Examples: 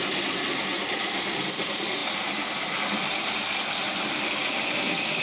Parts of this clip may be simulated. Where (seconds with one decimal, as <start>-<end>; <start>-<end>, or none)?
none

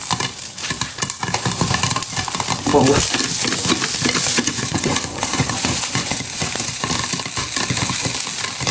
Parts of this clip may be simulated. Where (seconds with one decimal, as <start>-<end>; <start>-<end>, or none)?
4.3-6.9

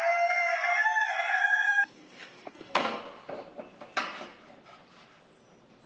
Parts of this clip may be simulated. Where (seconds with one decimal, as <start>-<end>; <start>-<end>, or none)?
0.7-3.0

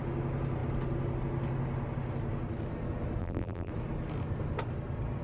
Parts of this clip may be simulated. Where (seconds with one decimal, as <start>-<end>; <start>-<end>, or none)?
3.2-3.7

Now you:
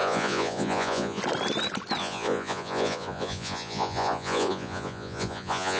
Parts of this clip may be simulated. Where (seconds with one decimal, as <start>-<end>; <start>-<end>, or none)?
0.0-1.2; 2.0-5.8

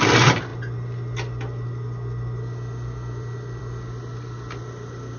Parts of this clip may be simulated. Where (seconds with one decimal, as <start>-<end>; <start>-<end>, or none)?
none

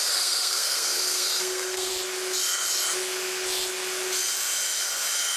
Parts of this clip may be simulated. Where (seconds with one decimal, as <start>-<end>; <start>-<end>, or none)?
0.0-1.9

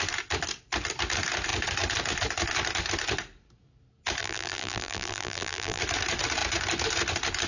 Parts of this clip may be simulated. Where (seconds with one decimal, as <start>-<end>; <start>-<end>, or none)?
4.2-5.8